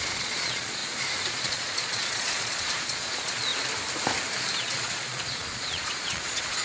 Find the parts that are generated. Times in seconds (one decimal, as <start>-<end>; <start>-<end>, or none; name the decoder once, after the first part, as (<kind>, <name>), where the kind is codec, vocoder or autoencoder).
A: 0.0-0.8 (vocoder, Vocos); 1.3-3.5; 4.6-6.6